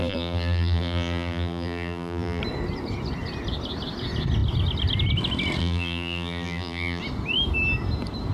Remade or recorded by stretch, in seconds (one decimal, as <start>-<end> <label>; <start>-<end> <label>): 0.0-2.4 remade; 2.4-5.6 recorded; 5.6-7.0 remade; 7.0-8.3 recorded